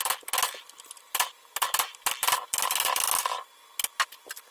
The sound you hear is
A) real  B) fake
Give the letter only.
A